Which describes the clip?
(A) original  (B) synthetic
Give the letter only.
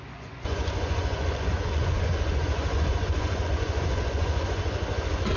B